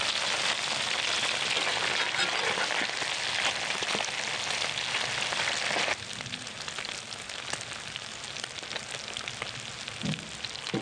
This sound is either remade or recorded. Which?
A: recorded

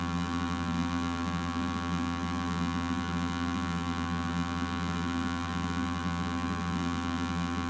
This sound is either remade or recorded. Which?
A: remade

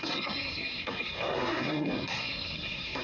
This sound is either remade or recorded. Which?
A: remade